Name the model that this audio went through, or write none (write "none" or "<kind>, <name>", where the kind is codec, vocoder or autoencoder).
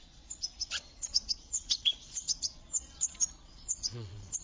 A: vocoder, Vocos